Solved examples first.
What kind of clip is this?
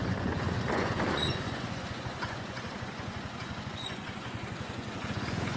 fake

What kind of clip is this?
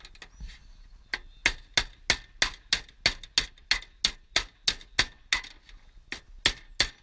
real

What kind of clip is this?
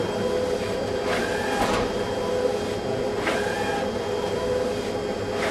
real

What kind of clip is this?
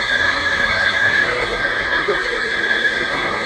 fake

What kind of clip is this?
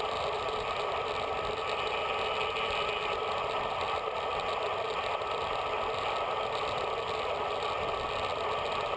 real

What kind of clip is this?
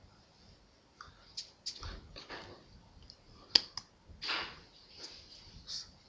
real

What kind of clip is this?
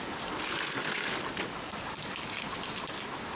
real